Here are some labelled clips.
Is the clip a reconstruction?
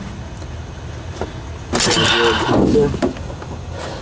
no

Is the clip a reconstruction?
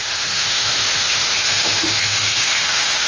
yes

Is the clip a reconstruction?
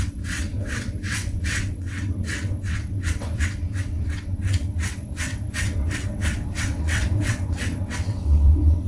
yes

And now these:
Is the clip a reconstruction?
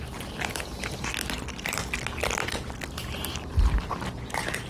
no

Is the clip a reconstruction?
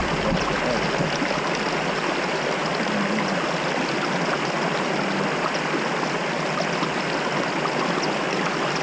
no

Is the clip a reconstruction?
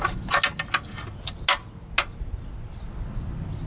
no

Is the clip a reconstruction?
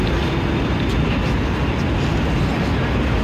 no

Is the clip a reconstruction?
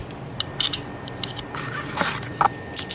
yes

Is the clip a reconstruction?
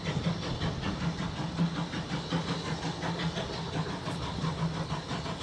no